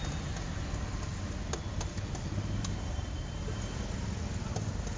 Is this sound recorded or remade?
recorded